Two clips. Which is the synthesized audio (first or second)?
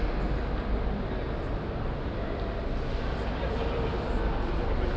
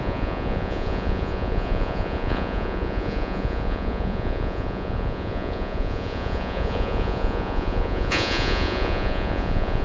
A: second